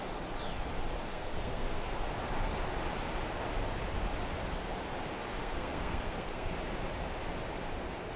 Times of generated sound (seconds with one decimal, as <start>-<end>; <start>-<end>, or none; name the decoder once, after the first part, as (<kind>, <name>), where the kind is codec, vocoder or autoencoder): 1.1-1.8 (codec, SNAC); 5.4-6.5